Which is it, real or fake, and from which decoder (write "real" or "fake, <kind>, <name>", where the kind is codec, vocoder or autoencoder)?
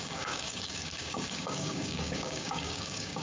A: fake, codec, DAC